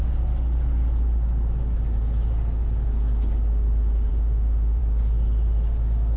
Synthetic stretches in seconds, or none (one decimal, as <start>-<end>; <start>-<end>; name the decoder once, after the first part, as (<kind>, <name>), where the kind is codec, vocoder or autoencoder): 4.1-4.8 (autoencoder, DAC-VAE)